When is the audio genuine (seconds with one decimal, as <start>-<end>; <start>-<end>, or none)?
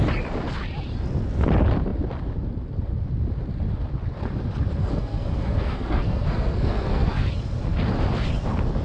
0.0-4.8; 7.3-8.8